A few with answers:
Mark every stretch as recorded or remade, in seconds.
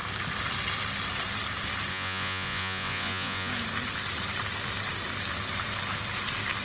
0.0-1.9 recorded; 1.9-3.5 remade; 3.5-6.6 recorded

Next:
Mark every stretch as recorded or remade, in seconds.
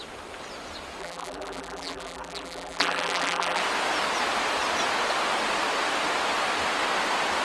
0.0-1.0 recorded; 1.0-3.6 remade; 3.6-7.4 recorded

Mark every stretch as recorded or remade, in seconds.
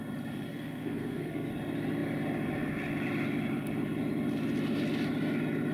0.0-0.5 recorded; 0.5-1.5 remade; 1.5-5.7 recorded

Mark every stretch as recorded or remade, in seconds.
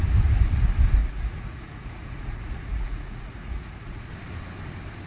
0.0-1.0 recorded; 1.0-4.1 remade; 4.1-5.1 recorded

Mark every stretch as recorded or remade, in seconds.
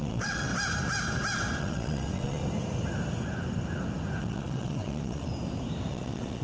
0.0-0.5 remade; 0.5-1.6 recorded; 1.6-2.4 remade; 2.4-4.2 recorded; 4.2-5.3 remade; 5.3-5.9 recorded; 5.9-6.4 remade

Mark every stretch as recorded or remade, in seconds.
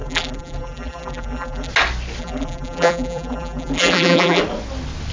0.0-1.7 remade; 1.7-2.2 recorded; 2.2-4.4 remade; 4.4-5.1 recorded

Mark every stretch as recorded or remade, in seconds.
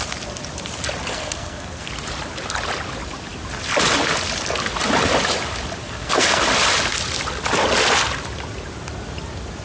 0.0-1.1 recorded; 1.1-1.9 remade; 1.9-5.8 recorded; 5.8-6.4 remade; 6.4-9.6 recorded